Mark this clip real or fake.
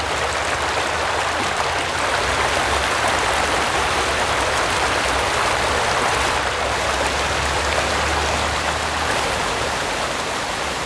real